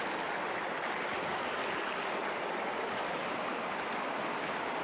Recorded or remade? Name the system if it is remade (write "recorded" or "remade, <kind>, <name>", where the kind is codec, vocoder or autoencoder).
recorded